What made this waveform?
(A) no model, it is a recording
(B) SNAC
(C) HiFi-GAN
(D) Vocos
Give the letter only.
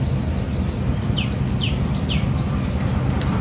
A